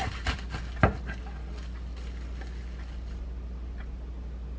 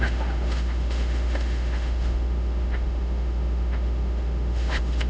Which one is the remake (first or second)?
second